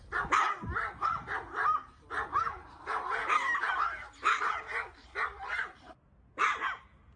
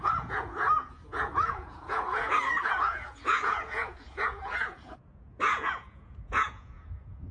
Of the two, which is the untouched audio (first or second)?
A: first